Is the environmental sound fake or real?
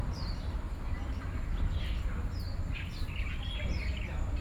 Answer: real